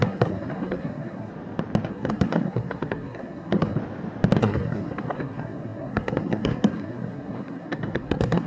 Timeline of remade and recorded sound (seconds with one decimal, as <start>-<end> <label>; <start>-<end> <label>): 0.0-1.3 remade; 1.3-1.9 recorded; 1.9-3.8 remade; 3.8-4.4 recorded; 4.4-8.5 remade